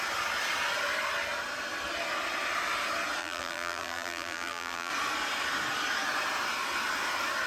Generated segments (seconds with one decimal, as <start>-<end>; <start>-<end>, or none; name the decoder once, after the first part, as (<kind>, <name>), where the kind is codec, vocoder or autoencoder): 3.2-4.9 (vocoder, BigVGAN v2)